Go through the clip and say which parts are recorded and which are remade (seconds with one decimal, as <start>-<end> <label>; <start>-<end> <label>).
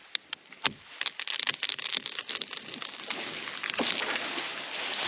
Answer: 0.0-5.1 recorded